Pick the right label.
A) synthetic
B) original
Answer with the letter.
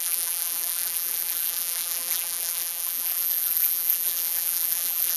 A